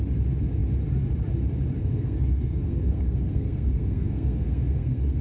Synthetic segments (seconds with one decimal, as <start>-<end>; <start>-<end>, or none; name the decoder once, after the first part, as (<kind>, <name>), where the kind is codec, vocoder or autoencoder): 1.8-5.2 (codec, SNAC)